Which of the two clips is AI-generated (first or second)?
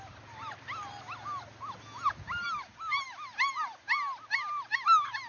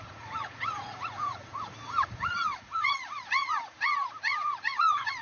second